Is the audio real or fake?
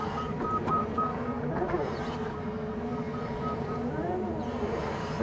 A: fake